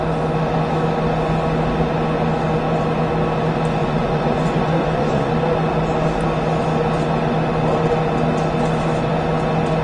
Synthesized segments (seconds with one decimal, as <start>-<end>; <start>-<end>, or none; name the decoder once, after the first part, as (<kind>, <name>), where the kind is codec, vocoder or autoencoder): 3.8-5.3 (vocoder, Vocos)